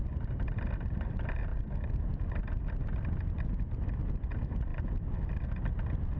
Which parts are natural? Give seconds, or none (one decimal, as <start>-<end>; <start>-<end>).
0.0-6.2